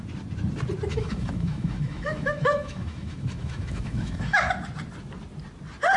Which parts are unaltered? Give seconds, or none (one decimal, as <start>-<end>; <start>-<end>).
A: 0.0-0.9; 4.5-6.0